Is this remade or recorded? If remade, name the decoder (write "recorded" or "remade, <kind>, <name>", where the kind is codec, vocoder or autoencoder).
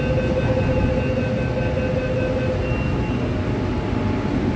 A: recorded